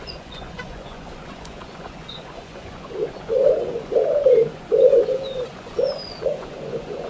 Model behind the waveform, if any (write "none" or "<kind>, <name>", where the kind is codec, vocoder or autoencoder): vocoder, Vocos